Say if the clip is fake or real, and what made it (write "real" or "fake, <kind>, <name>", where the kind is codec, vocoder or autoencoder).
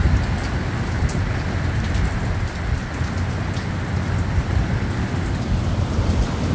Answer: real